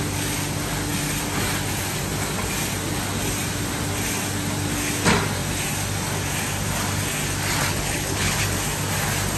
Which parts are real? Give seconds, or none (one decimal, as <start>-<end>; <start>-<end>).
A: 0.0-7.7; 8.4-9.4